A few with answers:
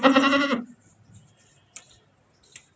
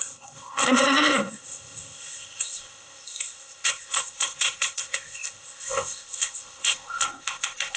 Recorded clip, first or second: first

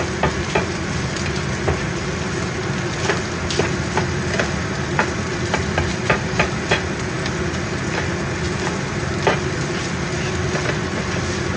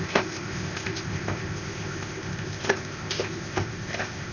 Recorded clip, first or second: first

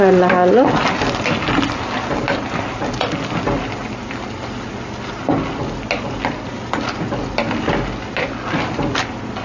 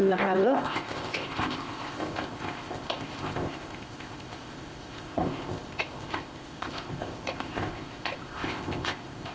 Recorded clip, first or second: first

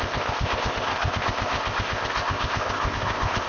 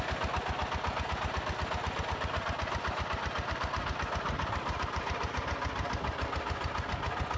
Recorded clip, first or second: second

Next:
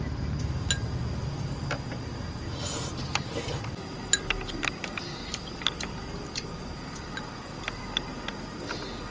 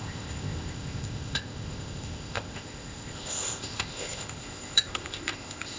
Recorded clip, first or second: first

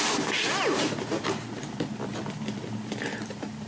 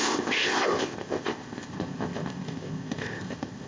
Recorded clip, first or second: first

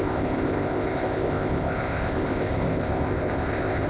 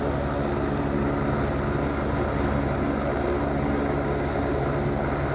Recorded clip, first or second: second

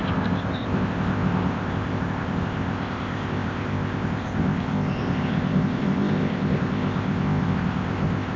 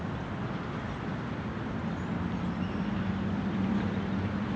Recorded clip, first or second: second